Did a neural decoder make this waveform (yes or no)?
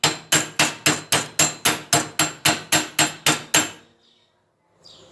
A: no